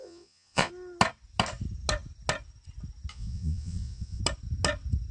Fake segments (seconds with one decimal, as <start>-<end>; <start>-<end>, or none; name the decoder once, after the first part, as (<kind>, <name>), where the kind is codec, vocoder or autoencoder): 0.0-0.7 (vocoder, Vocos); 3.1-4.2